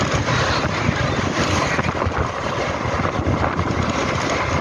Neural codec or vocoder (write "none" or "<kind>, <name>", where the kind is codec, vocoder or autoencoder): none